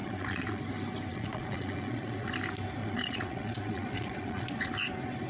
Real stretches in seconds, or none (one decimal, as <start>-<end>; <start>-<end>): 0.6-1.1; 2.3-2.8; 4.7-5.3

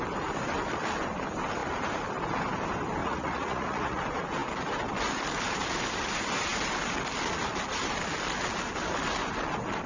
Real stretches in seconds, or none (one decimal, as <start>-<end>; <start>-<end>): 0.0-3.0; 4.0-9.9